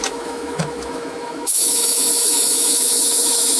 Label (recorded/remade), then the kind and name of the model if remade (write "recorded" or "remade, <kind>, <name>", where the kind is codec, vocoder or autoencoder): remade, autoencoder, DAC-VAE